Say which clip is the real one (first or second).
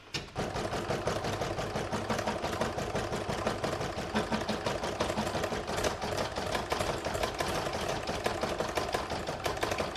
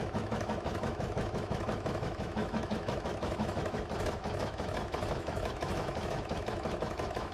first